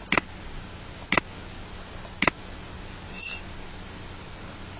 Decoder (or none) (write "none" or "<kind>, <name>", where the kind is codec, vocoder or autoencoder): none